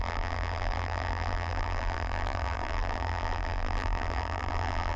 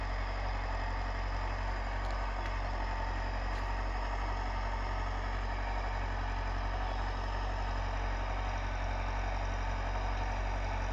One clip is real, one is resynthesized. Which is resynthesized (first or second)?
first